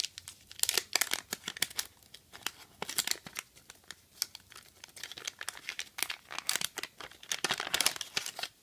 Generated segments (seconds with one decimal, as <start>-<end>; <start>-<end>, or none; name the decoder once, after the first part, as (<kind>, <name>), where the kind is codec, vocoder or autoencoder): none